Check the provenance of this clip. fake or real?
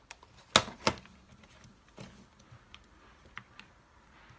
real